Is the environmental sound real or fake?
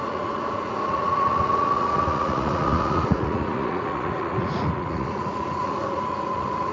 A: fake